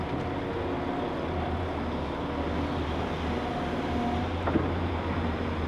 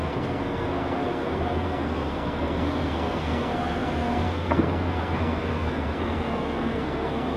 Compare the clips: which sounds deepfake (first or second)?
second